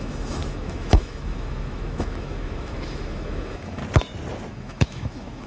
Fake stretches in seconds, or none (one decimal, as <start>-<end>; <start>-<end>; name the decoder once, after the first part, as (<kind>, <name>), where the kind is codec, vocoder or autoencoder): 0.0-3.8 (autoencoder, DAC-VAE); 4.5-5.5